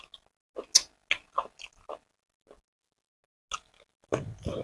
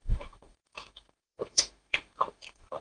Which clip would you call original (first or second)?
first